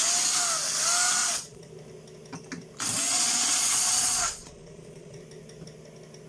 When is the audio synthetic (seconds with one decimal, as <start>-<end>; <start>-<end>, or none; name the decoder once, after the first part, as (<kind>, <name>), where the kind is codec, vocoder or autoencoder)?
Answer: 1.2-1.7 (vocoder, Vocos); 3.1-5.2

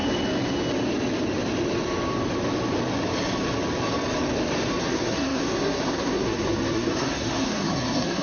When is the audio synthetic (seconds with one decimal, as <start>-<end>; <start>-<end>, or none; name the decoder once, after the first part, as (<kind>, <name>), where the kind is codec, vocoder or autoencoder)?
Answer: 4.8-8.2 (codec, SNAC)

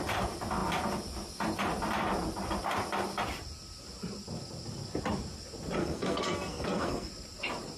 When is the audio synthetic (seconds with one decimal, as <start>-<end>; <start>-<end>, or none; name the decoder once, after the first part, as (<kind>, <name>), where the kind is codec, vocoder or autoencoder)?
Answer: 5.8-7.1 (codec, SNAC)

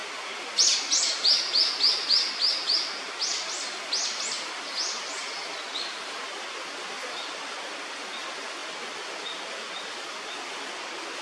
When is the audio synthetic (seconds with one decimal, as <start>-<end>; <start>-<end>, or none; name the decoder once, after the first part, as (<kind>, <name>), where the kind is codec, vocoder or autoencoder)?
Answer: none

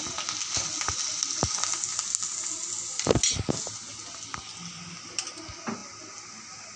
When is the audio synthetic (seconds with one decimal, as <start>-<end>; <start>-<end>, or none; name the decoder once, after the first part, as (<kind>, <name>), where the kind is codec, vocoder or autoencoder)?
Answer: none

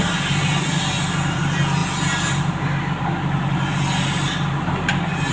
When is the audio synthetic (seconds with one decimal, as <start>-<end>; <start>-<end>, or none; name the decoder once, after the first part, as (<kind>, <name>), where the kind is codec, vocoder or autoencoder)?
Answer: none

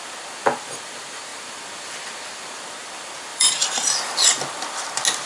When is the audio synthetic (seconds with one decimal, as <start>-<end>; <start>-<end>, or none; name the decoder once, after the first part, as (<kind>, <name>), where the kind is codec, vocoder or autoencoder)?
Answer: 3.3-4.7 (vocoder, BigVGAN v2)